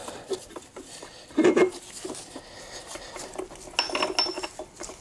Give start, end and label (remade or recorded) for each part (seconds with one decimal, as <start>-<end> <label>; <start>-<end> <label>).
0.0-5.0 recorded